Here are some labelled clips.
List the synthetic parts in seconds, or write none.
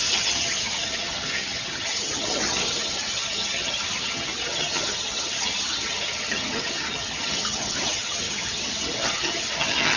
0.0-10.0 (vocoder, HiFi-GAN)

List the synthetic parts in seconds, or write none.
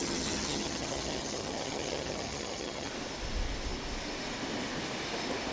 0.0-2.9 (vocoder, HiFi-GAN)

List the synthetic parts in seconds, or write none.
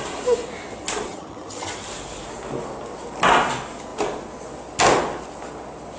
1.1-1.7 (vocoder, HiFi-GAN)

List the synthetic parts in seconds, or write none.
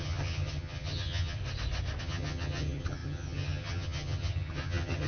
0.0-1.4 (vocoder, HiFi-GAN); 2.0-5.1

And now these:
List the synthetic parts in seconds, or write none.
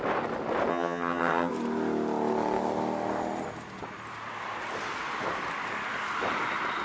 0.7-1.5 (vocoder, HiFi-GAN)